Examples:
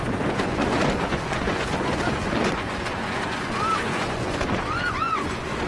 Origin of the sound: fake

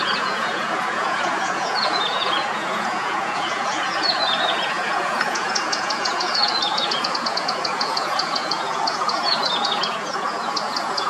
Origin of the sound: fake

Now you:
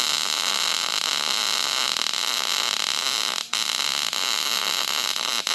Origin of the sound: real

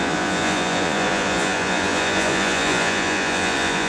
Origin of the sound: fake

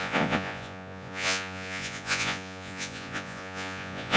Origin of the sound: fake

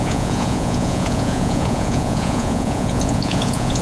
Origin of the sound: fake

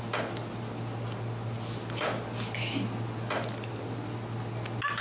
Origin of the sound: real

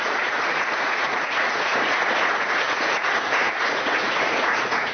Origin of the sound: fake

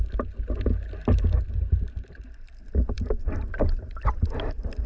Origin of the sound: real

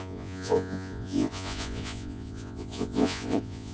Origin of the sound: fake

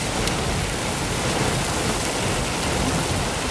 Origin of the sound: real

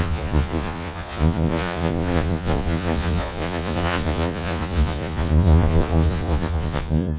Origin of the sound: fake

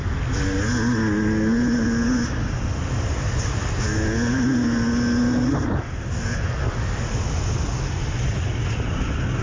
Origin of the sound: real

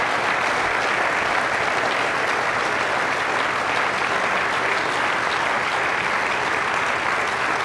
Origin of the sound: real